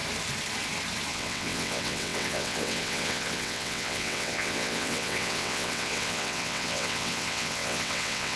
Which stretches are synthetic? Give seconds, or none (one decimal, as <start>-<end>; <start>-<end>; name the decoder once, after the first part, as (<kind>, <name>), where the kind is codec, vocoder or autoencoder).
1.1-8.4 (vocoder, WaveNeXt)